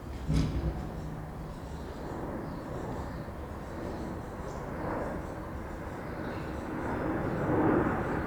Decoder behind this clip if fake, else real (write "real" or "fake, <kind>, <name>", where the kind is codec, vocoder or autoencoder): real